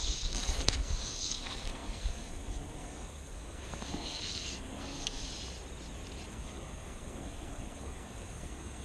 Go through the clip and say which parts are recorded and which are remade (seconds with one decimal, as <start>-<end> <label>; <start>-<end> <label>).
0.0-5.2 remade; 5.2-6.3 recorded; 6.3-8.8 remade